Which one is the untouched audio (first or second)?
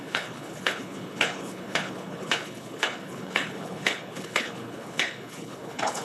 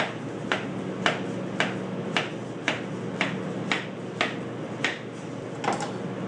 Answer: second